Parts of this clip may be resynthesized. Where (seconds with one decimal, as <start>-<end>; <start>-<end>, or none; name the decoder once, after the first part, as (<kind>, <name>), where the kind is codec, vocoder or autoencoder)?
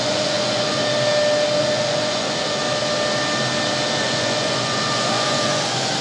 0.0-0.8 (vocoder, Vocos); 1.6-2.6; 4.0-6.0